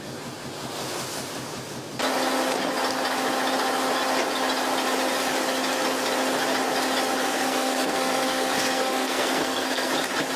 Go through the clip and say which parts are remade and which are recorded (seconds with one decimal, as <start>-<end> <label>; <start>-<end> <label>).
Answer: 0.0-7.2 recorded; 7.2-9.9 remade; 9.9-10.4 recorded

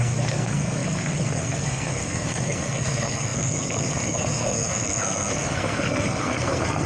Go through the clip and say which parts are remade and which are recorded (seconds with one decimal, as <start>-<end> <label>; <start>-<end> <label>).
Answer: 0.0-6.9 remade

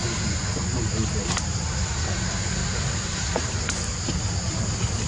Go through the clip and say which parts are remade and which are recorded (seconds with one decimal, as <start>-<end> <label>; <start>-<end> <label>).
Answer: 0.0-5.1 recorded

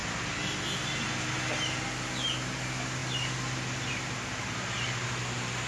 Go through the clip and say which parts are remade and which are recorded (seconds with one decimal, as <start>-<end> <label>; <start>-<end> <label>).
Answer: 0.0-5.7 recorded

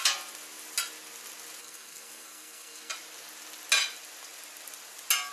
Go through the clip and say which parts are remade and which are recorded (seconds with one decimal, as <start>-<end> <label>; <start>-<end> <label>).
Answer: 0.0-1.6 recorded; 1.6-2.9 remade; 2.9-5.3 recorded

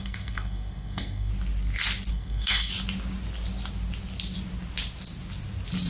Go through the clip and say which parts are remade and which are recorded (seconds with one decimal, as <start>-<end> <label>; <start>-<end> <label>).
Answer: 0.0-1.3 remade; 1.3-2.1 recorded; 2.1-2.7 remade; 2.7-5.9 recorded

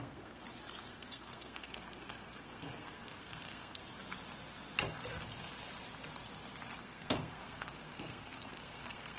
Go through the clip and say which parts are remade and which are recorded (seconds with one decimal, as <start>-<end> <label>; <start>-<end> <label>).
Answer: 0.0-0.4 remade; 0.4-0.9 recorded; 0.9-3.8 remade; 3.8-6.8 recorded; 6.8-9.2 remade

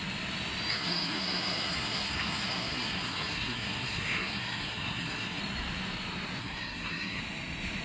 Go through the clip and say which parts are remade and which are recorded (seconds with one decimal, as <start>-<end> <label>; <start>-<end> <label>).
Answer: 0.0-0.7 recorded; 0.7-5.4 remade; 5.4-6.4 recorded; 6.4-7.2 remade; 7.2-7.8 recorded